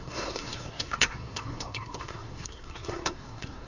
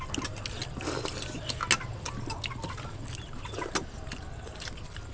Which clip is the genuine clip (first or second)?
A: second